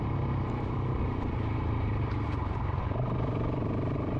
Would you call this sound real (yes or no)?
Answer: no